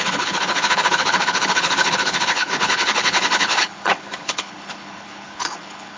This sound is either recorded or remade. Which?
remade